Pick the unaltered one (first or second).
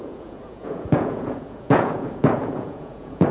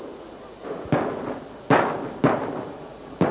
second